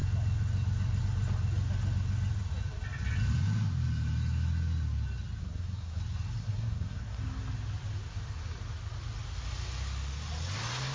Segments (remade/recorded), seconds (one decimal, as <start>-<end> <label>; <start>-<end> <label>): 0.0-5.4 recorded; 5.4-6.0 remade; 6.0-6.4 recorded; 6.4-7.2 remade; 7.2-10.9 recorded